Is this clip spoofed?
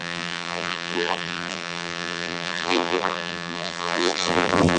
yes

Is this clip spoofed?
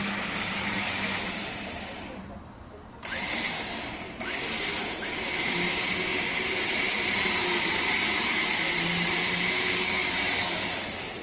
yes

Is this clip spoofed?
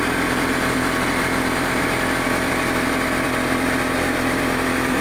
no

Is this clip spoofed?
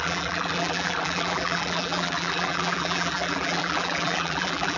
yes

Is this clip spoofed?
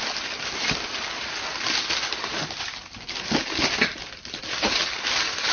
yes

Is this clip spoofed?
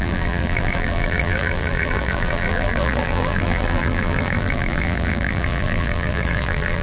yes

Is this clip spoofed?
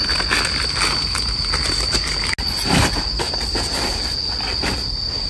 no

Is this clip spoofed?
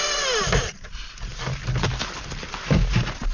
no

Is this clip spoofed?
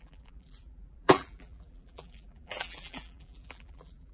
yes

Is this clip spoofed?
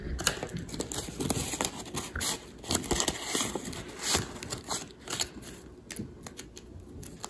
no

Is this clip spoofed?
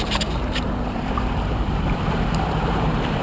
yes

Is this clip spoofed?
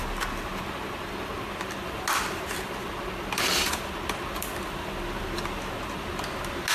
no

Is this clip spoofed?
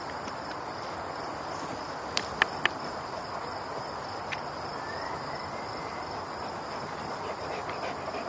yes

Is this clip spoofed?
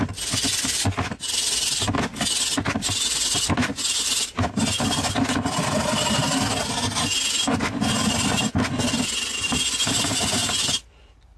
no